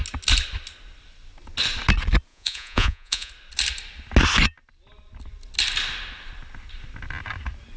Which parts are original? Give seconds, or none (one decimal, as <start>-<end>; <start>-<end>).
0.0-2.3; 3.3-7.8